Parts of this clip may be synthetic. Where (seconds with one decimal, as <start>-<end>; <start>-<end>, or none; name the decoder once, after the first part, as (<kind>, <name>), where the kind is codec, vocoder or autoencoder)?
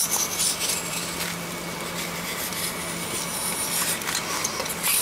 none